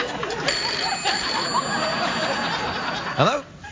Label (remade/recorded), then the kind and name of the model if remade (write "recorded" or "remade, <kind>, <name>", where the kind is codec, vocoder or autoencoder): recorded